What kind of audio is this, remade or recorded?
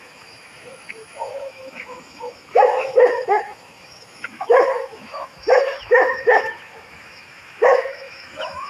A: remade